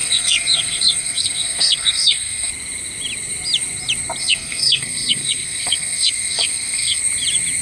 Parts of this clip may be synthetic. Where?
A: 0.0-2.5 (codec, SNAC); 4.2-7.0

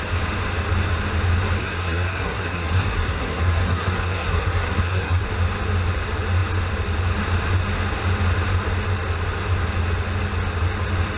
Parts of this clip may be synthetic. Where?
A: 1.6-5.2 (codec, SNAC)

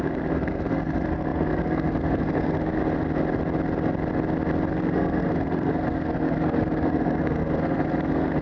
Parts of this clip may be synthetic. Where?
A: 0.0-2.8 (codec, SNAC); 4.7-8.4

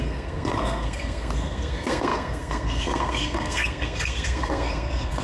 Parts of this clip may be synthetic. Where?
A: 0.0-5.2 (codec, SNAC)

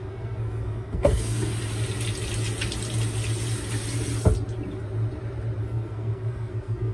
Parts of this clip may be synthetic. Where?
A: 0.0-1.5 (codec, SNAC); 5.6-6.9

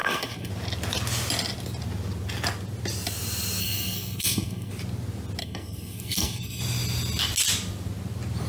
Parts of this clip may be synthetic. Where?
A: 0.0-0.5 (codec, SNAC); 3.6-4.7; 5.4-6.6